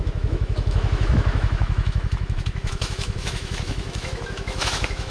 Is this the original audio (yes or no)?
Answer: no